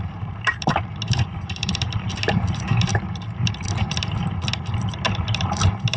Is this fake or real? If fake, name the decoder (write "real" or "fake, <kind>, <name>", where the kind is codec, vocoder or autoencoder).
fake, vocoder, BigVGAN v2